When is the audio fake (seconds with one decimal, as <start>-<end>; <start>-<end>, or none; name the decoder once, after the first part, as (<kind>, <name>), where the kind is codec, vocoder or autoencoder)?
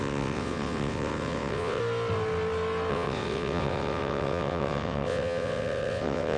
0.0-1.8 (vocoder, WaveNeXt); 2.9-6.4